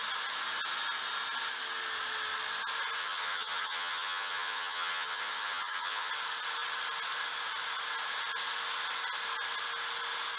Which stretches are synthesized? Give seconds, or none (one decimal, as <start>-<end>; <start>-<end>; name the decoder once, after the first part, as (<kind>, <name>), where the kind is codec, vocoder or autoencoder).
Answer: 3.0-6.1 (vocoder, HiFi-GAN)